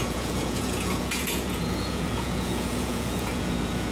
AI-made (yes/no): yes